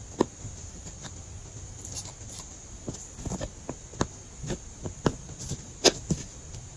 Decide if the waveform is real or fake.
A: real